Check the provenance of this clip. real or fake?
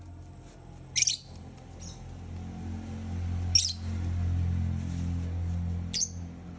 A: real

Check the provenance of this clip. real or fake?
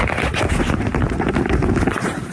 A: real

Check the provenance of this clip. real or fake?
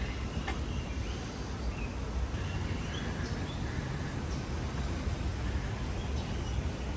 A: real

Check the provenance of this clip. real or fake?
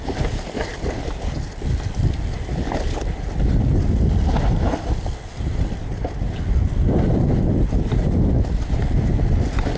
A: real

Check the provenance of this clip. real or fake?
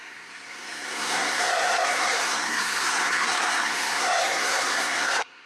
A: fake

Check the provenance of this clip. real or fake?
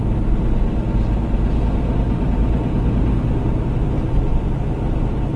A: real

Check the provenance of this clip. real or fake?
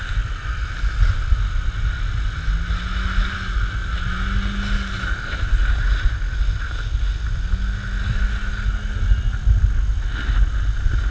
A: real